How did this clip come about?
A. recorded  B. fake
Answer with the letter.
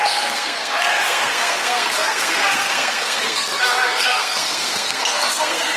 B